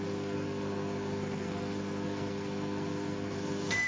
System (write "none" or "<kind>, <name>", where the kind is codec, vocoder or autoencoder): codec, SNAC